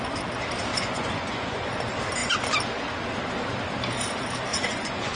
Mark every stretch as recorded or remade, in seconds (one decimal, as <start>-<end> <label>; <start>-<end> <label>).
0.0-0.7 recorded; 0.7-1.8 remade; 1.8-4.5 recorded; 4.5-5.2 remade